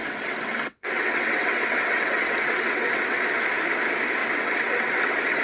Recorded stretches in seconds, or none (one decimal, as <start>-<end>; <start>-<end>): 3.2-4.2

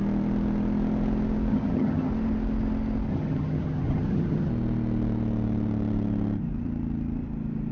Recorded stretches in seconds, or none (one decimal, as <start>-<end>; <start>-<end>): 0.0-1.5; 2.1-3.1; 4.5-7.7

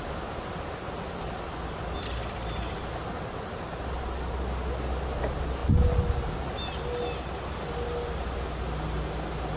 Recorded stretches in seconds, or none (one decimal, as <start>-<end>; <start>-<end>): 0.0-9.6